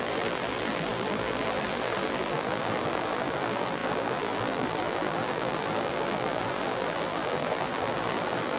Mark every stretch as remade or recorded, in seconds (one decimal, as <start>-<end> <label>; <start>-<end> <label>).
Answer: 0.0-8.6 remade